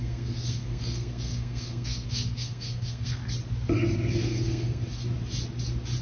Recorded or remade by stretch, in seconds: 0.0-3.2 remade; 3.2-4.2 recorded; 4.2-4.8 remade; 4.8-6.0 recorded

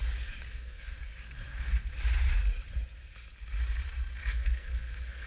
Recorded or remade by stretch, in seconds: 0.0-0.5 recorded; 0.5-1.0 remade; 1.0-4.2 recorded; 4.2-5.3 remade

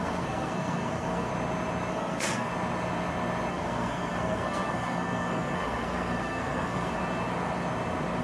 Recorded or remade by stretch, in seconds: 0.0-1.3 remade; 1.3-1.9 recorded; 1.9-2.5 remade; 2.5-3.5 recorded; 3.5-7.0 remade; 7.0-8.2 recorded

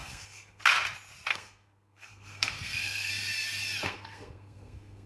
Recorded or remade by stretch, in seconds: 0.0-0.6 remade; 0.6-1.3 recorded; 1.3-3.1 remade; 3.1-3.8 recorded; 3.8-5.1 remade

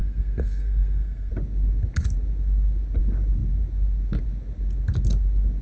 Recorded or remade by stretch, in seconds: 0.0-1.3 remade; 1.3-5.6 recorded